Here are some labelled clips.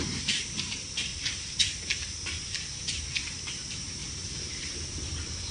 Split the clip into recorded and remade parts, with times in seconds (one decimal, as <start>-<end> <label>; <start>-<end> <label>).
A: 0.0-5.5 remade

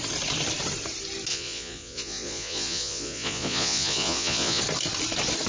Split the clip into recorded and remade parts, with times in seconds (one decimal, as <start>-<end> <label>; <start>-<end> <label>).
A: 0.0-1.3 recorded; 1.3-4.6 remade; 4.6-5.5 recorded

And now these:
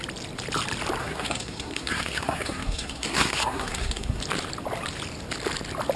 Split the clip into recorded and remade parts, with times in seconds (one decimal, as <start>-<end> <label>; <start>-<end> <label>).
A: 0.0-1.0 recorded; 1.0-4.2 remade; 4.2-6.0 recorded

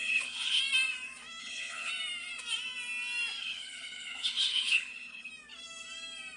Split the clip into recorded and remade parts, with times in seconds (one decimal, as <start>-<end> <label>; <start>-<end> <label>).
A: 0.0-0.6 remade; 0.6-1.4 recorded; 1.4-1.9 remade; 1.9-3.4 recorded; 3.4-5.3 remade; 5.3-6.4 recorded